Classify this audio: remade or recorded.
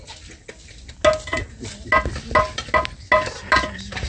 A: recorded